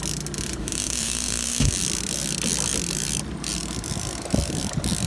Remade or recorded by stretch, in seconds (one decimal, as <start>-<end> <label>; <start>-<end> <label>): 0.0-0.6 recorded; 0.6-1.7 remade; 1.7-5.1 recorded